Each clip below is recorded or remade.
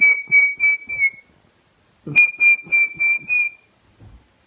recorded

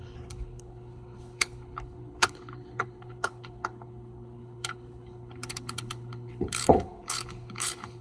remade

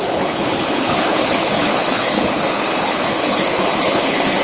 remade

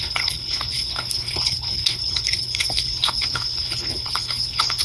remade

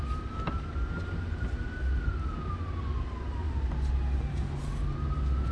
recorded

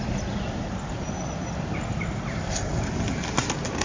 recorded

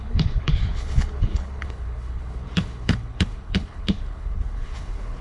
remade